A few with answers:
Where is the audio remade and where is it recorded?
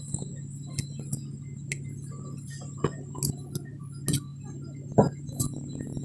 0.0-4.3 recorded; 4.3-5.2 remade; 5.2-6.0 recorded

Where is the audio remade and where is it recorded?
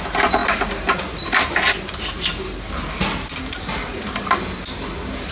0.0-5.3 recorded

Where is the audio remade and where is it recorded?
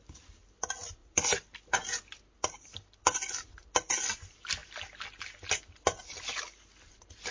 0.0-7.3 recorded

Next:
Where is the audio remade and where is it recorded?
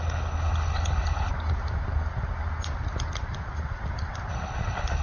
0.0-1.3 remade; 1.3-4.3 recorded; 4.3-5.0 remade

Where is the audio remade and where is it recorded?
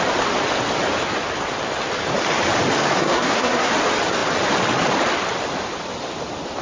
0.0-3.0 recorded; 3.0-3.7 remade; 3.7-6.6 recorded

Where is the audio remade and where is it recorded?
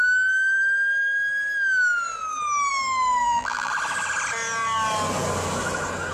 0.0-3.2 recorded; 3.2-3.7 remade; 3.7-6.1 recorded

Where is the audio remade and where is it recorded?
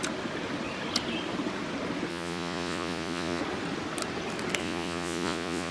0.0-2.1 recorded; 2.1-3.4 remade; 3.4-4.6 recorded; 4.6-5.7 remade